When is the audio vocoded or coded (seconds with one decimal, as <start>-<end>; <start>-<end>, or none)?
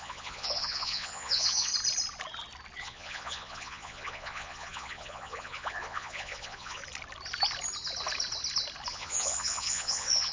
0.0-1.7; 2.8-6.8; 8.9-10.3